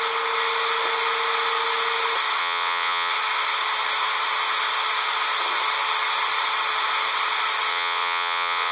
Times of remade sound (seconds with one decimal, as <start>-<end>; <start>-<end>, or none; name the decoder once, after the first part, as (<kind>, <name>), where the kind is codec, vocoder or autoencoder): 2.4-3.1 (vocoder, WaveNeXt); 7.7-8.7